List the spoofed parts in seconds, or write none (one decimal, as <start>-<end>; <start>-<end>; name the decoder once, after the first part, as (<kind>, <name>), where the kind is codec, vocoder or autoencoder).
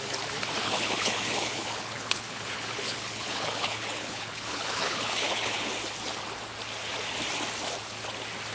0.6-5.7 (codec, HILCodec)